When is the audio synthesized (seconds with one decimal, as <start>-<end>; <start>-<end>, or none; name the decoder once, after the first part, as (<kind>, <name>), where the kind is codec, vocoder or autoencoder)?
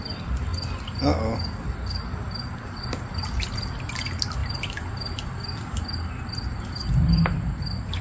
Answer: none